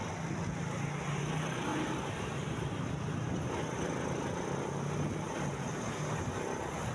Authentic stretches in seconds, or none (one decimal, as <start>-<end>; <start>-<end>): 0.0-6.9